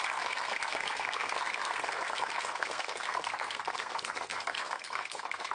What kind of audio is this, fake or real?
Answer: fake